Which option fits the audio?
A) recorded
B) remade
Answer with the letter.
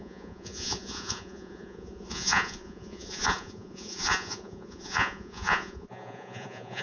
B